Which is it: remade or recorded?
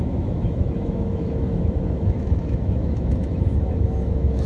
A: remade